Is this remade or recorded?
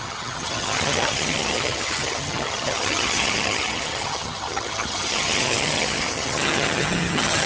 remade